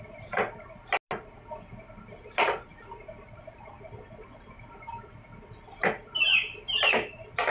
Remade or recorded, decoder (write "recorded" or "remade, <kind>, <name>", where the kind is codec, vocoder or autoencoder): recorded